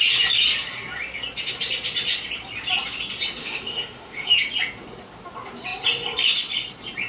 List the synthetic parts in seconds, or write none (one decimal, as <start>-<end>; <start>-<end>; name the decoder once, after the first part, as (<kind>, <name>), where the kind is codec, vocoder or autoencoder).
3.4-4.4 (autoencoder, DAC-VAE)